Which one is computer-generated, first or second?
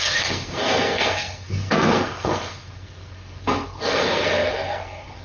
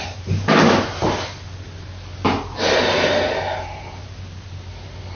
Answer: first